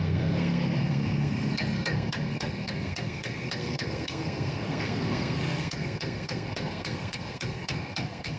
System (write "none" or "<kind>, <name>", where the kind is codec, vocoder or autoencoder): codec, SNAC